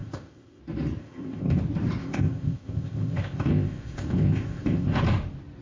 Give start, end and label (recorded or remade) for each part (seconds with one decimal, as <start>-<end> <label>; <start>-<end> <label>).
0.0-0.6 remade; 0.6-1.0 recorded; 1.0-1.6 remade; 1.6-2.0 recorded; 2.0-5.0 remade; 5.0-5.6 recorded